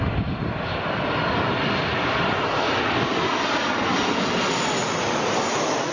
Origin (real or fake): real